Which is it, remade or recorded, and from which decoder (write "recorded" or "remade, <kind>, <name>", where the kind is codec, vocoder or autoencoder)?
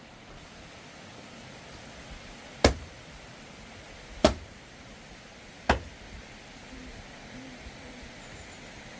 recorded